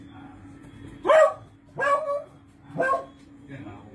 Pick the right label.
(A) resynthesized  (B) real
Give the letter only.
B